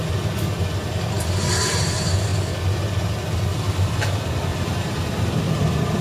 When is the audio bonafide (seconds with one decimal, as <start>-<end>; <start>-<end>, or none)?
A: 0.0-6.0